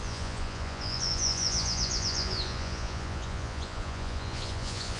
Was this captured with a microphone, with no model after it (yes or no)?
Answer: no